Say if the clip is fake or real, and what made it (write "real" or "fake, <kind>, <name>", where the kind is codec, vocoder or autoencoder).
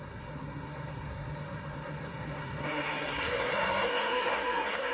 fake, codec, SNAC